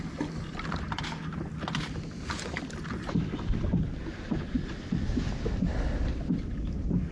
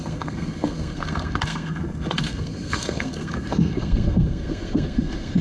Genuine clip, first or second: first